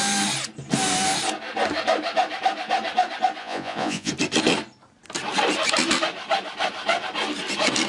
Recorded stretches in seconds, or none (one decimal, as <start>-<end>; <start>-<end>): 0.0-3.4; 4.1-7.9